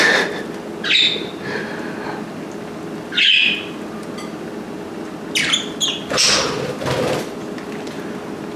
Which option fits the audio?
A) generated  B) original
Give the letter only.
B